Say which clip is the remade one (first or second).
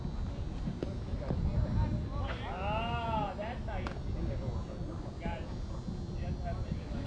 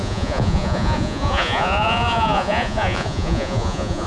second